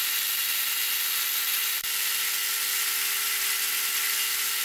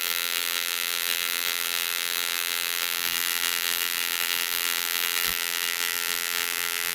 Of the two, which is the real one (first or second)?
first